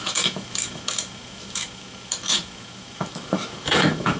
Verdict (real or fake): fake